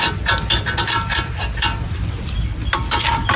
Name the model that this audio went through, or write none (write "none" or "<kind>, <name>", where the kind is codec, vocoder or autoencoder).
none